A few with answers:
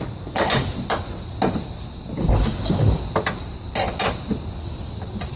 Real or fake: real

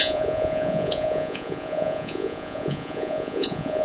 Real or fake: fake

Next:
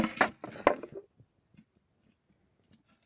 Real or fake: real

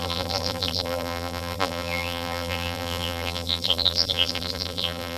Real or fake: fake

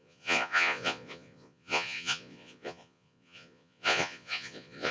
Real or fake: fake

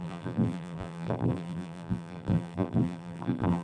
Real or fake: fake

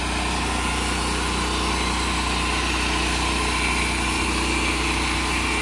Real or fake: real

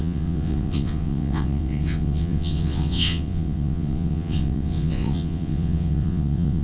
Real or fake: fake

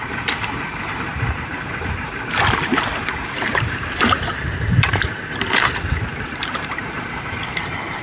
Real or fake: fake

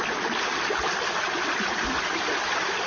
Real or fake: real